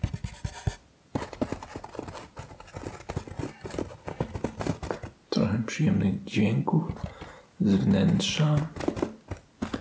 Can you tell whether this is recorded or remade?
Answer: recorded